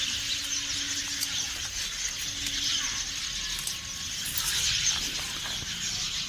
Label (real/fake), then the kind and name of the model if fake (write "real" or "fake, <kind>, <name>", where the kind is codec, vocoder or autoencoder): real